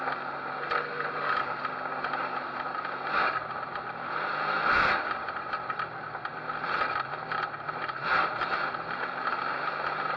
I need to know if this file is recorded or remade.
recorded